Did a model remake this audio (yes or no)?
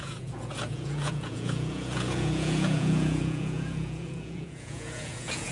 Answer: yes